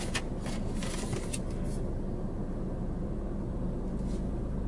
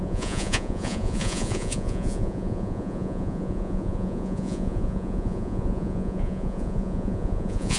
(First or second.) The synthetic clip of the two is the second